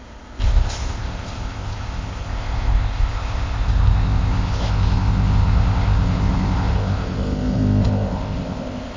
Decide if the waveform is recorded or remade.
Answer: remade